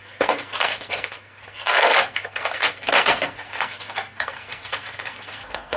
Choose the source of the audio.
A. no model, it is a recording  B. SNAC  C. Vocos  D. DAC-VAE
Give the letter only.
B